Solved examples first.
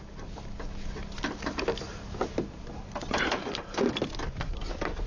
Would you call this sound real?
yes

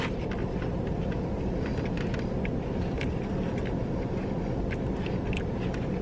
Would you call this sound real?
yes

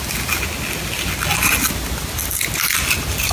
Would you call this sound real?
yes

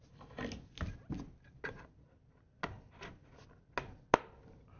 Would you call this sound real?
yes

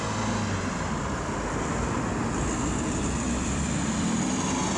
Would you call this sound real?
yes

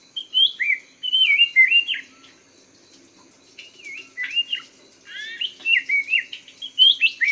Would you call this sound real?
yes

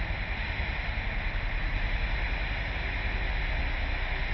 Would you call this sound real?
yes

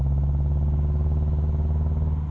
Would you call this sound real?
yes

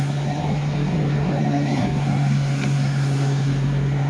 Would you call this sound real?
no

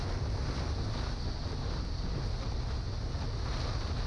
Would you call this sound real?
yes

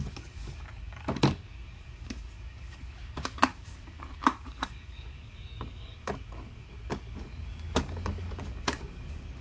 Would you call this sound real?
no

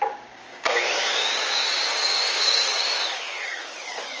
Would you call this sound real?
no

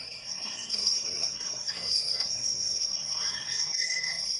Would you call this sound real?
no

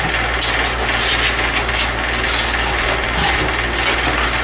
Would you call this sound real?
yes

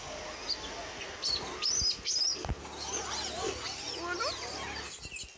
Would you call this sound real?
yes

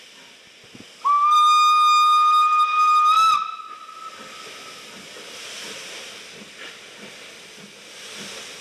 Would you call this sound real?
yes